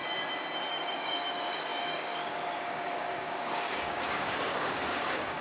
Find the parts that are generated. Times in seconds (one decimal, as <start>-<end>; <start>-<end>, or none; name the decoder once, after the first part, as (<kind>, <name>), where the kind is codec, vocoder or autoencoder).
0.7-5.4 (codec, DAC)